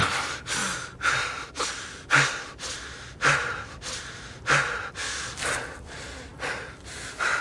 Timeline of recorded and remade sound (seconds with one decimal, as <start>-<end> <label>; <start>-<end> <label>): 0.0-7.4 recorded